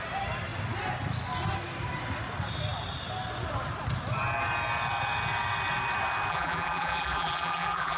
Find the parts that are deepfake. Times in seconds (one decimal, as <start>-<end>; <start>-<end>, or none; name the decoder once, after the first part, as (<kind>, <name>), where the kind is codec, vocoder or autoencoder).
6.3-8.0 (vocoder, BigVGAN v2)